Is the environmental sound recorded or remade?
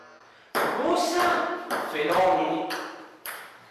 remade